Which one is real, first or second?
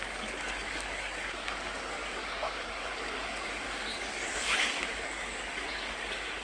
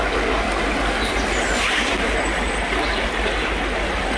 second